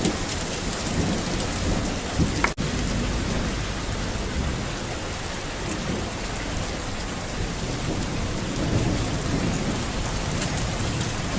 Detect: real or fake real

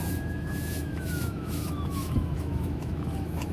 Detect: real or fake fake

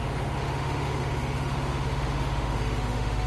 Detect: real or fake fake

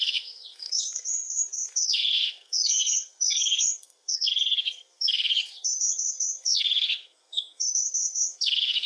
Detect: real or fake fake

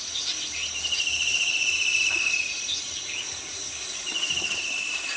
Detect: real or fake real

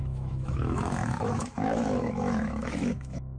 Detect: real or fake fake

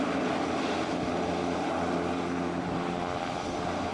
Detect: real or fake real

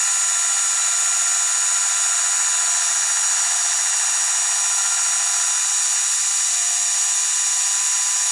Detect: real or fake real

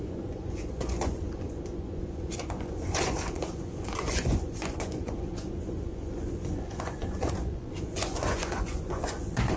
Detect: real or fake fake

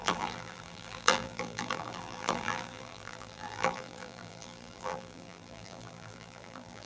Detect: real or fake fake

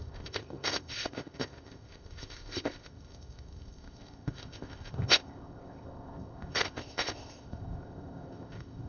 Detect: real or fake fake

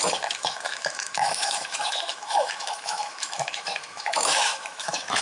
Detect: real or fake fake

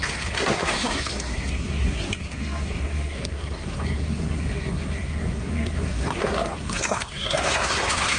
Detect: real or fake fake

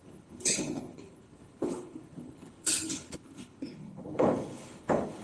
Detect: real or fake fake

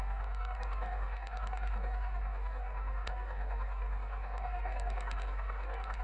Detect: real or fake fake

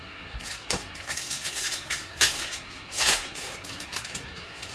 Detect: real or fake fake